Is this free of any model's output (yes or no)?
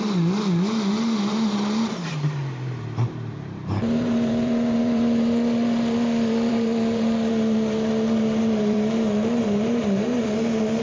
no